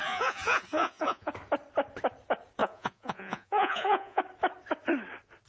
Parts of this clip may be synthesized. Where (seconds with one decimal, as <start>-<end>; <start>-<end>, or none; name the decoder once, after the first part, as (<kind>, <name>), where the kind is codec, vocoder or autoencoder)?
0.0-1.3 (vocoder, Vocos); 2.6-4.2